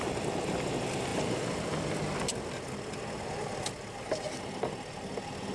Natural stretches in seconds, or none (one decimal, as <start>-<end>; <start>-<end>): 0.0-5.5